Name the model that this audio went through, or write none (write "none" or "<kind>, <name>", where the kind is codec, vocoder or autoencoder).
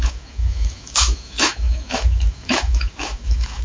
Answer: autoencoder, DAC-VAE